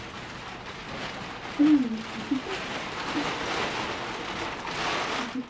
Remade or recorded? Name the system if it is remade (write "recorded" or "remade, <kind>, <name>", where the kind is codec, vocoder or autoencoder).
recorded